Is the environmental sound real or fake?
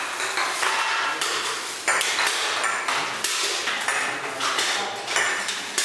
real